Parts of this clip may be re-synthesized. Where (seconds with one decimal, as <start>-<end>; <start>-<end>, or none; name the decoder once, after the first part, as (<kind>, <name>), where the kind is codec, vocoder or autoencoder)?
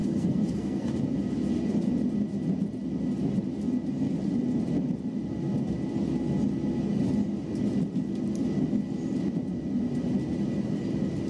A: 0.0-0.9 (codec, SNAC)